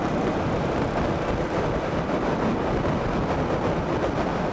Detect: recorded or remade recorded